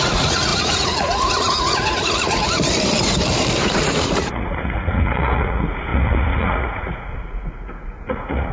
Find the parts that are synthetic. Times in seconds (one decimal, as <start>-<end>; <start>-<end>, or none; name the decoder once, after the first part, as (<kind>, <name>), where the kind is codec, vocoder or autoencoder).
0.0-2.4 (vocoder, Vocos); 3.6-8.5